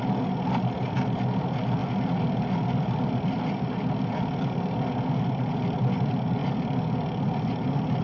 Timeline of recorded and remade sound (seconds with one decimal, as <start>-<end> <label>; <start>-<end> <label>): 0.0-8.0 recorded